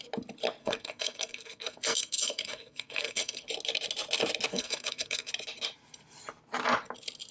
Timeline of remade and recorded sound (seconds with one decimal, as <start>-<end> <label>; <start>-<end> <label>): 0.0-0.6 recorded; 0.6-3.4 remade; 3.4-4.5 recorded; 4.5-5.3 remade; 5.3-7.3 recorded

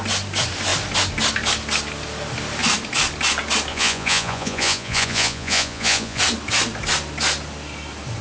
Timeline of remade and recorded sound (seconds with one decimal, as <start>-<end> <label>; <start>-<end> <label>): 0.0-3.7 recorded; 3.7-6.2 remade; 6.2-8.2 recorded

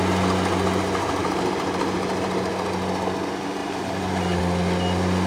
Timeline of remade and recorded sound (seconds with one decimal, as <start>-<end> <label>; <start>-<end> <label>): 0.0-1.2 recorded; 1.2-2.5 remade; 2.5-3.6 recorded; 3.6-4.4 remade; 4.4-5.3 recorded

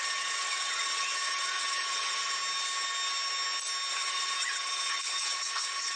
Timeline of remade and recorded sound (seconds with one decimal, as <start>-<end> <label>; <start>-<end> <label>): 0.0-2.4 remade; 2.4-3.9 recorded; 3.9-6.0 remade

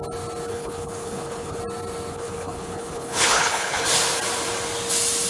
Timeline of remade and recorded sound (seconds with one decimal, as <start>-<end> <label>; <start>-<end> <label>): 0.0-0.5 recorded; 0.5-1.6 remade; 1.6-2.1 recorded; 2.1-3.8 remade; 3.8-5.3 recorded

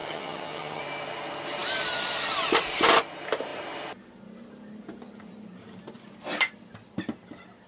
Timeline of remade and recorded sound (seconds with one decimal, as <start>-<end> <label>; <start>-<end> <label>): 0.0-0.8 remade; 0.8-7.7 recorded

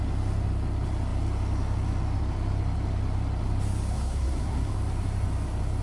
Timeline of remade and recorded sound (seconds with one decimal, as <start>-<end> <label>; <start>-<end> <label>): 0.0-3.9 recorded; 3.9-4.7 remade; 4.7-5.8 recorded